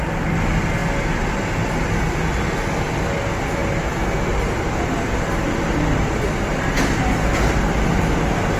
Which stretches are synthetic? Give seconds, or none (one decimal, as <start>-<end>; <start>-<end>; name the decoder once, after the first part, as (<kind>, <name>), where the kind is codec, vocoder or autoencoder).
none